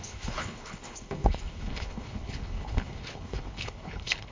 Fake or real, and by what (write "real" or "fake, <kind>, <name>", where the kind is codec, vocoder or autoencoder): fake, codec, HILCodec